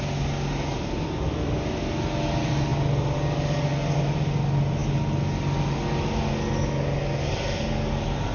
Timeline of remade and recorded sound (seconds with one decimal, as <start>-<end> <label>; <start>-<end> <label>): 0.0-8.3 recorded